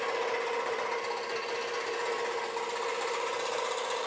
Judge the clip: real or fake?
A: real